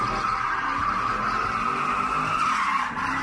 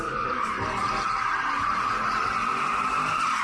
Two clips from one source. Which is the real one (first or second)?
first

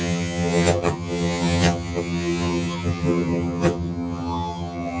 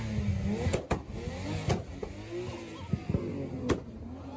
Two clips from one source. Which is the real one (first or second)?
second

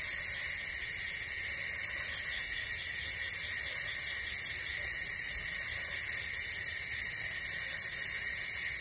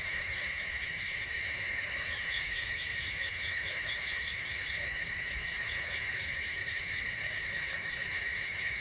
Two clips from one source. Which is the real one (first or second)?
first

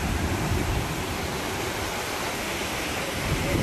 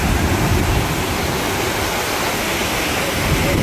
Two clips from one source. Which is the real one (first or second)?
second